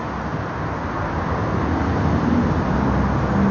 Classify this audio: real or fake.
real